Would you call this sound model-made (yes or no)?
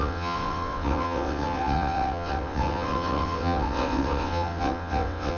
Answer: yes